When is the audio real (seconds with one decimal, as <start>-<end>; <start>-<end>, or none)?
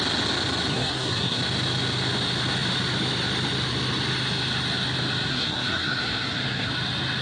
0.0-0.7; 1.4-5.3; 6.7-7.2